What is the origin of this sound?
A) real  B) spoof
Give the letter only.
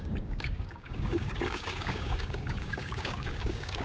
B